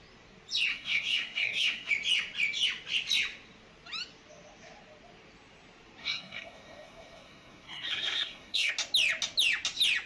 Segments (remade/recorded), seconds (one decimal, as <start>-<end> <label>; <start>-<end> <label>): 0.0-0.7 recorded; 0.7-1.9 remade; 1.9-6.0 recorded; 6.0-8.7 remade; 8.7-10.1 recorded